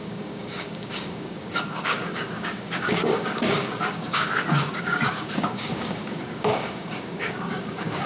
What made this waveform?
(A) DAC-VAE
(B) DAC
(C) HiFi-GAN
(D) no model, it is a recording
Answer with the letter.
B